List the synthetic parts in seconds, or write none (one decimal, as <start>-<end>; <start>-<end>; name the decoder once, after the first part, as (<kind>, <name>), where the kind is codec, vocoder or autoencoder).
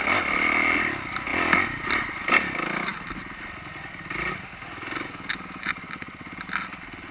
none